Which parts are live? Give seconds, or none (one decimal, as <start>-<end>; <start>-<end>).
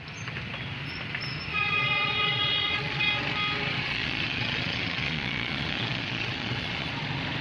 0.0-1.5; 3.1-3.8; 6.9-7.4